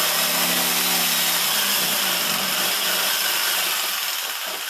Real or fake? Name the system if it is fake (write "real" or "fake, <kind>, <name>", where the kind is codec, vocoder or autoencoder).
real